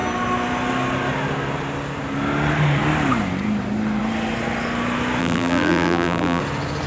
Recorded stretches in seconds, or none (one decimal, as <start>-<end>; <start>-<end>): 0.0-5.2; 6.4-6.9